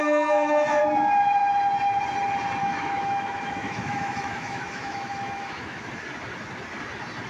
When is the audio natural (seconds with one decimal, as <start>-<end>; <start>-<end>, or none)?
0.8-2.6; 5.8-7.3